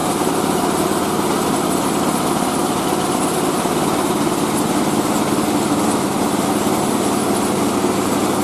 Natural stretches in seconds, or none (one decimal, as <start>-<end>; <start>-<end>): 0.6-8.4

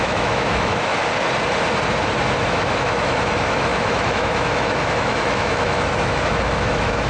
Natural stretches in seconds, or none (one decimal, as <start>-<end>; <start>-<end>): 1.0-2.4

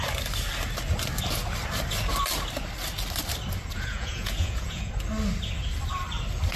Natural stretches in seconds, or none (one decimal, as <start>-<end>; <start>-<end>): 0.0-3.7; 4.9-6.6

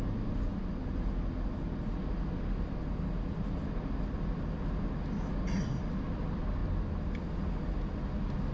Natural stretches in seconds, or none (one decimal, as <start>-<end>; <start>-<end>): 0.0-8.5

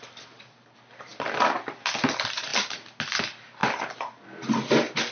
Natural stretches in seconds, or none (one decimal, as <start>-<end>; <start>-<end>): 0.0-5.1

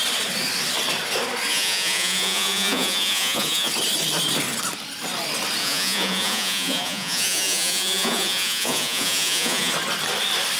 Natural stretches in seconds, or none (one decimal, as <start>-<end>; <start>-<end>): 0.0-1.5; 3.7-5.6; 9.7-10.6